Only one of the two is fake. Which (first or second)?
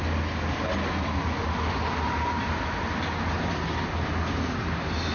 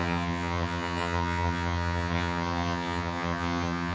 second